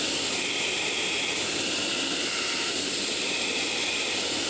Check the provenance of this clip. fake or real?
real